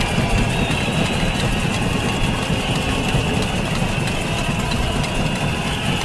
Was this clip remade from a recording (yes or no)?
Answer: no